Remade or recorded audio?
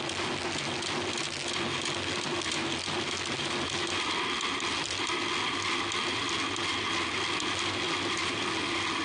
recorded